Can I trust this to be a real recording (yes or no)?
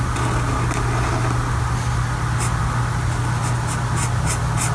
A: yes